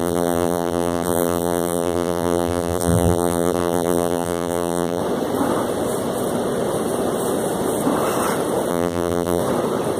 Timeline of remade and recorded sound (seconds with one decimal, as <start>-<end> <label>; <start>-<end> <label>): 0.0-5.0 remade; 5.0-8.7 recorded; 8.7-9.4 remade; 9.4-10.0 recorded